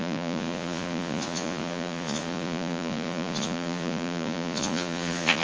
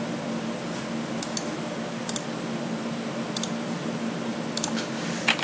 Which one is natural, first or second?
second